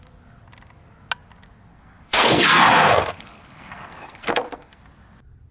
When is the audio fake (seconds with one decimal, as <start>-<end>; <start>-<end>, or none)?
1.7-4.8

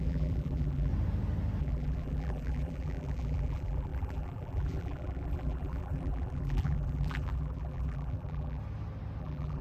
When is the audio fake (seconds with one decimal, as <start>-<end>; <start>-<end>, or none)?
0.0-0.9; 1.6-8.6; 9.2-9.6

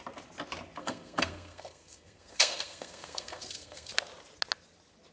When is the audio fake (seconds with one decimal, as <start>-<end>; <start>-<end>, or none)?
0.8-3.9

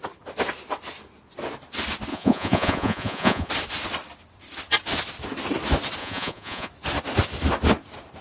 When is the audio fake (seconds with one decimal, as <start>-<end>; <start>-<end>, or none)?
2.1-3.5; 6.0-6.7

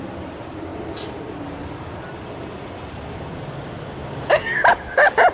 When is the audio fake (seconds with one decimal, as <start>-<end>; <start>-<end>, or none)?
0.0-0.7; 2.2-4.0; 4.7-5.3